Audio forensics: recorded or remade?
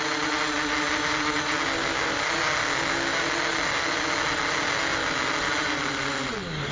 recorded